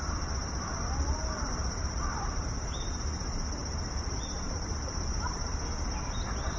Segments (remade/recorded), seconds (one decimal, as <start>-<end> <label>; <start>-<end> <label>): 0.0-0.4 recorded; 0.4-2.4 remade; 2.4-3.6 recorded; 3.6-5.6 remade; 5.6-6.6 recorded